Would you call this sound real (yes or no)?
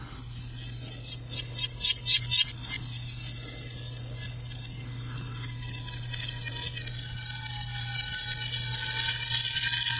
yes